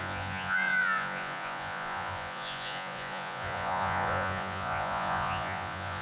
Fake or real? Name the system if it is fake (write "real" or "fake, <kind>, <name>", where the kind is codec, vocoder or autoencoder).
fake, vocoder, Vocos